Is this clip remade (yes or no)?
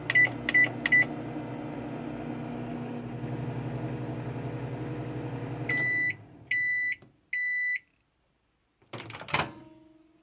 no